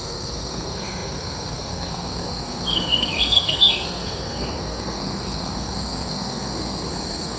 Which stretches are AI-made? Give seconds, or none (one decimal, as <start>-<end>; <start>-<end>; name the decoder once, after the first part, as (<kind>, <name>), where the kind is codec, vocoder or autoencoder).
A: 0.0-7.4 (codec, SNAC)